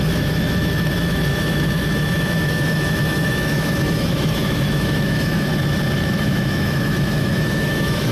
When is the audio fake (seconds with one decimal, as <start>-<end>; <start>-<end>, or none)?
0.0-5.5; 6.0-8.1